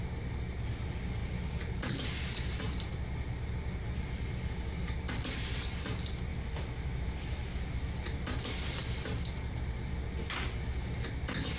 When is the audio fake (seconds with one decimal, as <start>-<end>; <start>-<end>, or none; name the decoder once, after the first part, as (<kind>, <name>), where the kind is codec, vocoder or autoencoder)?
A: 6.3-7.6 (autoencoder, DAC-VAE)